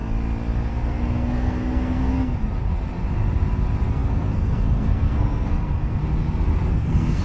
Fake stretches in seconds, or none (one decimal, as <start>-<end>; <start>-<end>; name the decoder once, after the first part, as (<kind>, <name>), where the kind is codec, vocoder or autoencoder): 0.7-2.4 (codec, SNAC); 3.9-6.0; 6.7-7.2